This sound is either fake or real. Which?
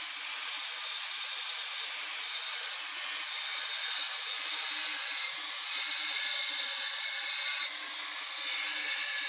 real